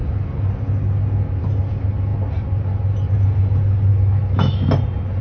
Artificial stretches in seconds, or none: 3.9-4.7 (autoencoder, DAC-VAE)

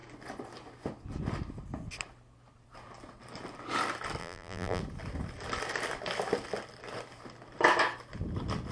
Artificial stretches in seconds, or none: 4.2-4.8 (vocoder, BigVGAN v2)

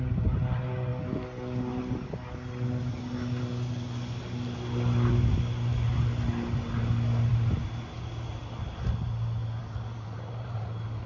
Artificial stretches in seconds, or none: 9.6-10.6 (vocoder, BigVGAN v2)

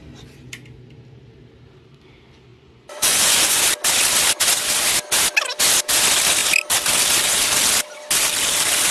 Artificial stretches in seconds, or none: 2.5-3.6 (vocoder, Vocos)

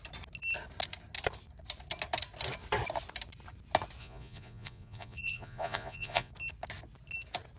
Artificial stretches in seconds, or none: 4.0-6.3 (vocoder, Vocos)

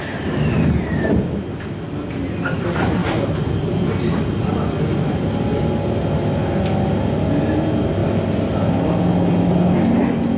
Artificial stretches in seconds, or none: none

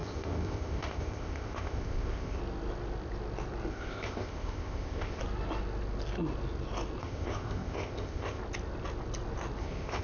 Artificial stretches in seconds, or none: 0.0-2.4 (codec, ZipCodec); 3.7-5.2; 7.0-8.4; 9.6-10.0

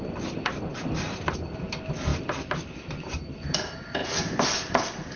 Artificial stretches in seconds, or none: 0.7-1.6 (vocoder, BigVGAN v2); 2.1-3.4